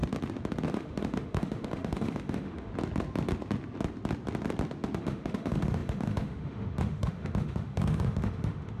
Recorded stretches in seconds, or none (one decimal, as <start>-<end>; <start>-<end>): 0.0-0.7; 2.7-5.0